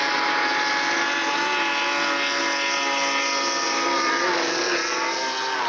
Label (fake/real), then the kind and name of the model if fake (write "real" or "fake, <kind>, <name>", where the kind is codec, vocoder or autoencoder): real